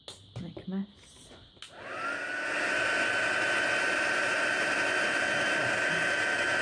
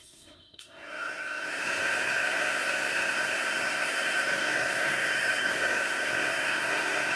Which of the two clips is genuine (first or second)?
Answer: first